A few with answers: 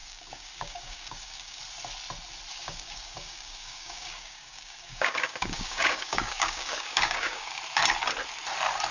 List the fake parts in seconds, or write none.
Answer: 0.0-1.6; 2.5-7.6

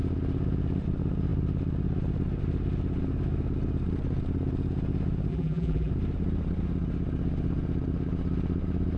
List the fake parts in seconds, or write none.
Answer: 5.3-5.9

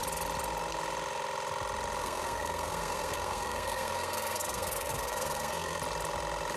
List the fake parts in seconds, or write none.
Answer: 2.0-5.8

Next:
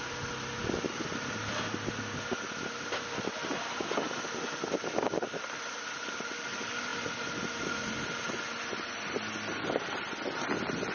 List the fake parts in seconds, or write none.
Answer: none